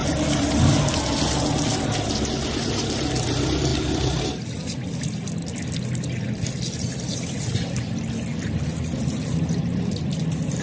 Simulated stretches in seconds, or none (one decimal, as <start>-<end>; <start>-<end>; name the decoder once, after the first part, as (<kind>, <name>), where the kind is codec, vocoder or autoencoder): none